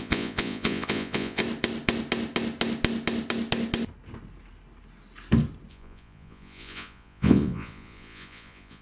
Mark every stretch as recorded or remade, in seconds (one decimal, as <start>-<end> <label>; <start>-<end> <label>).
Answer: 0.0-1.4 remade; 1.4-5.7 recorded; 5.7-8.8 remade